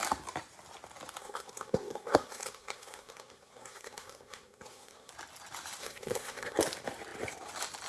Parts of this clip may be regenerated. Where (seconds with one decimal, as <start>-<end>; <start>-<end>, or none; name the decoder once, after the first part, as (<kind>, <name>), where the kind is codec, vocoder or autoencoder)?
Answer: 1.2-5.1 (codec, SNAC); 5.8-6.6